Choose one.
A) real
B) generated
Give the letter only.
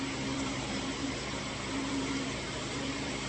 B